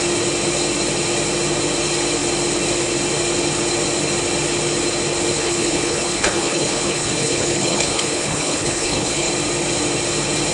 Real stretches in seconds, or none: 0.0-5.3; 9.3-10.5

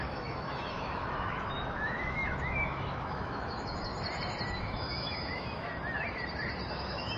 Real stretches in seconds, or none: 3.9-4.6; 5.7-6.7

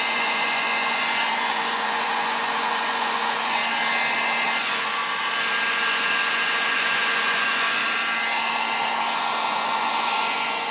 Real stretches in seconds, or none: 3.6-4.6; 5.0-5.7; 7.8-9.2

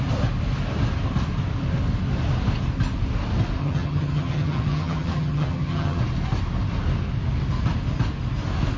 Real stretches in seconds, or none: 0.0-3.6; 6.0-8.8

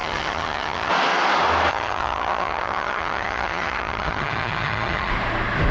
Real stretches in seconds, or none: 0.9-1.7; 5.1-5.7

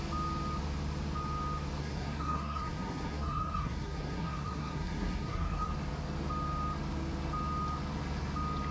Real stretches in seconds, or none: 0.0-1.8; 5.7-8.7

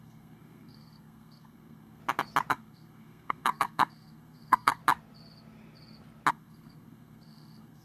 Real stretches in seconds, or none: 2.0-2.5; 4.8-6.3